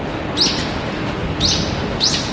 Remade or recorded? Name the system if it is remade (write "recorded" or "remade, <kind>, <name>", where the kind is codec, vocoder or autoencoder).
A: recorded